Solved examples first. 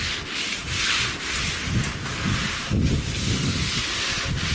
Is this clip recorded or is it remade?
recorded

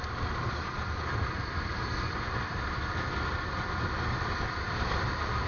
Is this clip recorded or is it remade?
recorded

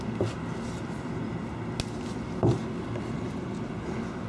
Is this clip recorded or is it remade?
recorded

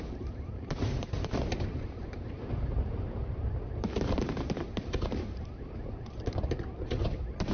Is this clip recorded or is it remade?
remade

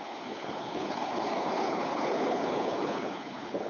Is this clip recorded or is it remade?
remade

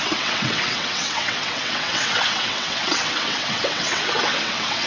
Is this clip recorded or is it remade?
remade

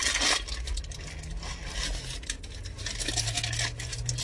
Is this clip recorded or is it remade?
recorded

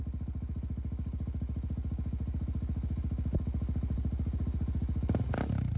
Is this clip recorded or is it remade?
recorded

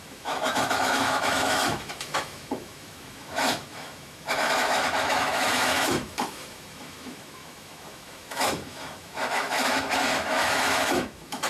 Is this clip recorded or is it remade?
remade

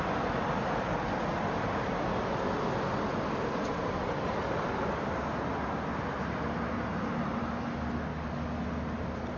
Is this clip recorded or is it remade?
recorded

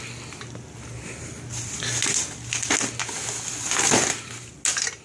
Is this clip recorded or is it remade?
recorded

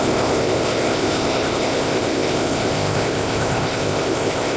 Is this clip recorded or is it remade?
remade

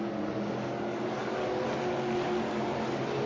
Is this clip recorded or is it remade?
recorded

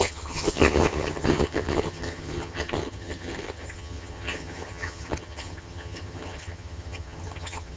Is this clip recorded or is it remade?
remade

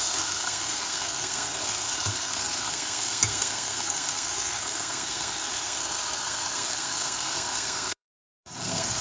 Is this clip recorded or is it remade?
remade